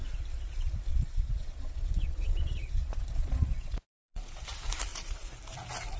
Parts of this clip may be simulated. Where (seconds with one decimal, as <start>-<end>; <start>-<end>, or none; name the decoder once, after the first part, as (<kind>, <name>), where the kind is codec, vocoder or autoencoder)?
0.9-4.4 (vocoder, Vocos); 4.9-5.4